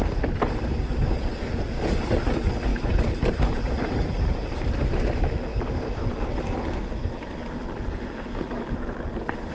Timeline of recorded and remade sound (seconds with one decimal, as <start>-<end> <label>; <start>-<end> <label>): 0.0-2.7 recorded; 2.7-4.9 remade; 4.9-5.5 recorded; 5.5-6.1 remade; 6.1-9.5 recorded